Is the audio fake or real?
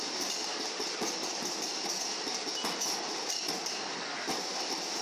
real